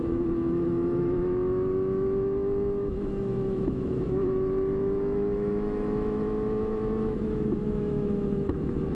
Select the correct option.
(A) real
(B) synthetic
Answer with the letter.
B